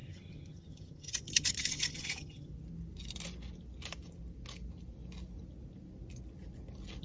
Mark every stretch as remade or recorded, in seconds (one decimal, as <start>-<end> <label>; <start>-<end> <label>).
0.0-2.5 remade; 2.5-7.0 recorded

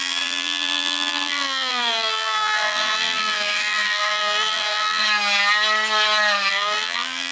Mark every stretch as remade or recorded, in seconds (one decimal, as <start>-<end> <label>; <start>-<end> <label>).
0.0-5.0 remade; 5.0-6.5 recorded; 6.5-7.3 remade

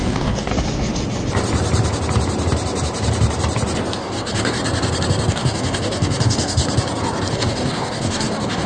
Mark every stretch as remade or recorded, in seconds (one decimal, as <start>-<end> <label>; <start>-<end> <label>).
0.0-0.5 remade; 0.5-4.0 recorded; 4.0-4.6 remade; 4.6-5.3 recorded; 5.3-6.6 remade; 6.6-7.3 recorded; 7.3-8.7 remade

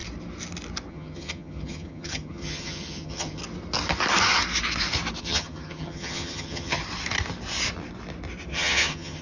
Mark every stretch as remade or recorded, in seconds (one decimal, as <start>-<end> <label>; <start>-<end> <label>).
0.0-0.9 recorded; 0.9-3.4 remade; 3.4-5.2 recorded; 5.2-6.8 remade; 6.8-8.5 recorded; 8.5-9.2 remade

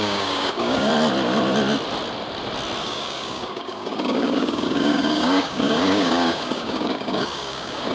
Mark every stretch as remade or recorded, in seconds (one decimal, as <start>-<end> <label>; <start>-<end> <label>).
0.0-0.9 remade; 0.9-2.8 recorded; 2.8-7.9 remade

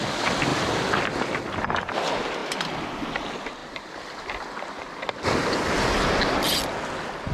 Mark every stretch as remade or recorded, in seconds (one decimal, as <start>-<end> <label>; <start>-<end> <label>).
0.0-0.5 recorded; 0.5-1.0 remade; 1.0-2.4 recorded; 2.4-3.1 remade; 3.1-3.6 recorded; 3.6-4.8 remade; 4.8-7.3 recorded